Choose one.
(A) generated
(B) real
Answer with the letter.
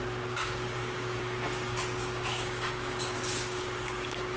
A